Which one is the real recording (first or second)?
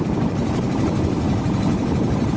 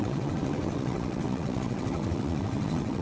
first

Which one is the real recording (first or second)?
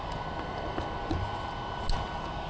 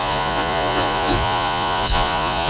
first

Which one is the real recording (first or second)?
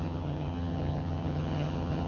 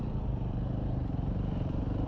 second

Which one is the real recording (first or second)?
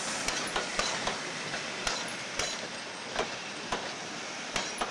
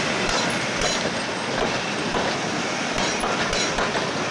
second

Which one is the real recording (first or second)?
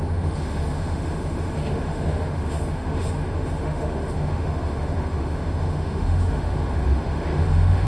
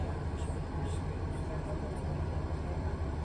second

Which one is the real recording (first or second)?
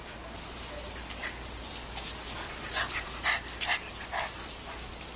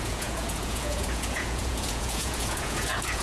first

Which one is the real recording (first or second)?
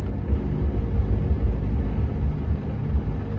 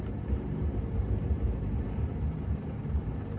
first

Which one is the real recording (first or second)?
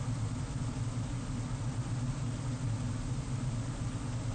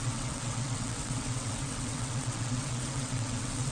first